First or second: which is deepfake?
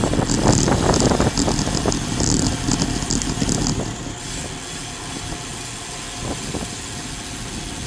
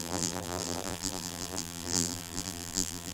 second